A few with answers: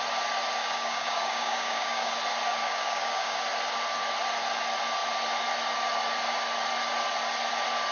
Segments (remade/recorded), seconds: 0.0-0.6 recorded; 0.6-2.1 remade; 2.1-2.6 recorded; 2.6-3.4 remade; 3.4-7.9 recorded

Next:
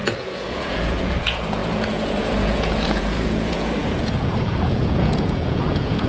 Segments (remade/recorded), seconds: 0.0-6.1 remade